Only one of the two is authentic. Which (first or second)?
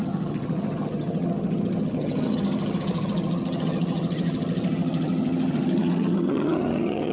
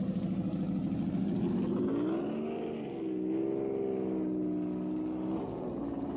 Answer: second